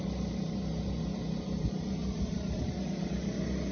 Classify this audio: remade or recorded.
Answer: recorded